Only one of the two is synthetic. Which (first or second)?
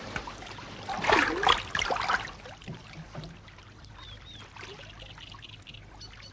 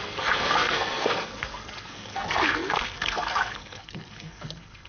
second